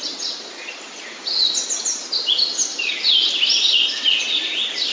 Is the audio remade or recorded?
recorded